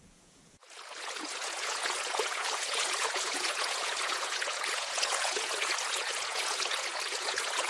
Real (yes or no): no